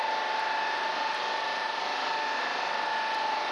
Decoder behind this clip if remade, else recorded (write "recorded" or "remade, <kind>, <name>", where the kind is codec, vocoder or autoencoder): remade, vocoder, BigVGAN v2